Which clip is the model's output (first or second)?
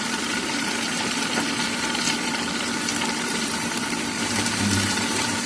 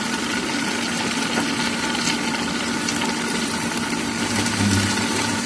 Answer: first